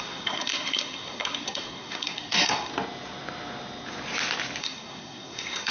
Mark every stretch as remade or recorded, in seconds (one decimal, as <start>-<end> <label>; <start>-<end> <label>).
0.0-2.7 remade; 2.7-4.6 recorded; 4.6-5.7 remade